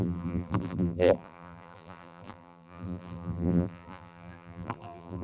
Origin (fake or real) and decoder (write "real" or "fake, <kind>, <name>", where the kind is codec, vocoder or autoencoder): fake, vocoder, BigVGAN v2